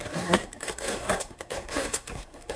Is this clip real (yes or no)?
no